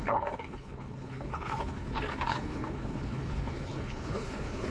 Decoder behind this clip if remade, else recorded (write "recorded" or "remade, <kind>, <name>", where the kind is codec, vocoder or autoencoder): remade, codec, HILCodec